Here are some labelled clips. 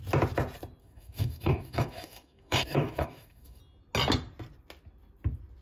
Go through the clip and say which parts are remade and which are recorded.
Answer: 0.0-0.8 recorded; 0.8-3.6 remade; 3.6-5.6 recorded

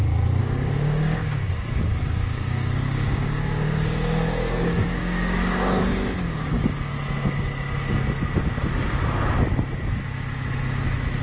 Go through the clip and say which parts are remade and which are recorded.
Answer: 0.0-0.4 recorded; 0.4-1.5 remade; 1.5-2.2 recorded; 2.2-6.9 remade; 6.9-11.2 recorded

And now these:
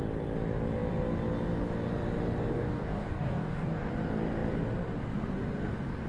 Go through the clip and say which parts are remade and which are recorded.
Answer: 0.0-2.5 recorded; 2.5-3.9 remade; 3.9-6.1 recorded